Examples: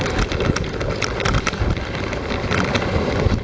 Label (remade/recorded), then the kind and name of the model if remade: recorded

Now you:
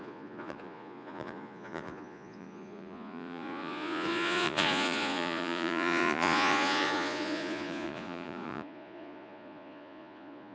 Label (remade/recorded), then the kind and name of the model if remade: remade, vocoder, Vocos